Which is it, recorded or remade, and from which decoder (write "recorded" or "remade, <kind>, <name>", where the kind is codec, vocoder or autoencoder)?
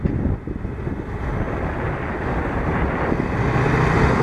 recorded